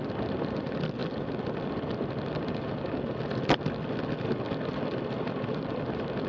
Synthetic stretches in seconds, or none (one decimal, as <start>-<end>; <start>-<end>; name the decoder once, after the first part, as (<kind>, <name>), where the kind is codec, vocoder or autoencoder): none